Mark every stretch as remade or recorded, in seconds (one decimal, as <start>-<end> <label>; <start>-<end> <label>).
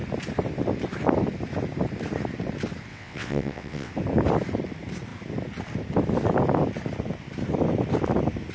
0.0-2.9 recorded; 2.9-3.9 remade; 3.9-8.5 recorded